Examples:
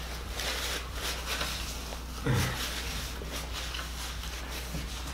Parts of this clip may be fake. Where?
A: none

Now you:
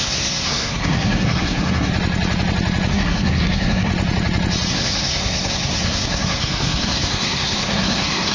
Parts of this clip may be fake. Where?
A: 0.0-1.9 (codec, SNAC); 2.9-3.9; 4.7-8.3